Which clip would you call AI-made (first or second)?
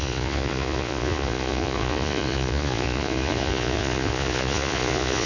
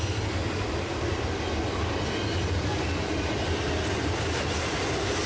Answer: first